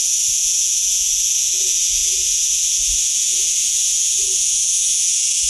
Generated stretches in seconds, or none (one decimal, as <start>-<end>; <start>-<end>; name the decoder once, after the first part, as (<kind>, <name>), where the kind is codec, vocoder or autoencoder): 0.0-5.5 (vocoder, Vocos)

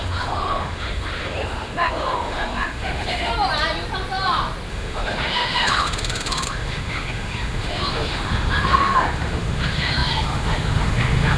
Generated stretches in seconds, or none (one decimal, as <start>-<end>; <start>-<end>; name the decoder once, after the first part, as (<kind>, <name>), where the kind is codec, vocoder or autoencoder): 0.0-3.3 (autoencoder, DAC-VAE); 4.7-11.4

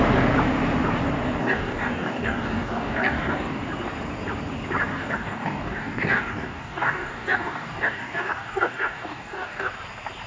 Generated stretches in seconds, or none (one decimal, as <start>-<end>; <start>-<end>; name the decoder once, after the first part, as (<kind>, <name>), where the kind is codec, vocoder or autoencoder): 1.4-3.6 (codec, DAC); 4.9-9.7